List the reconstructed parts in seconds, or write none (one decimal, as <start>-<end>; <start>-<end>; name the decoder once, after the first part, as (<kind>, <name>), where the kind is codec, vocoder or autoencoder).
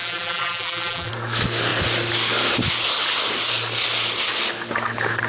0.0-1.1 (vocoder, BigVGAN v2)